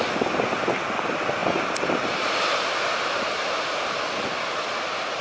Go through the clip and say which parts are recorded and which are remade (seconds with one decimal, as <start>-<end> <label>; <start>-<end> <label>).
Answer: 0.0-5.2 recorded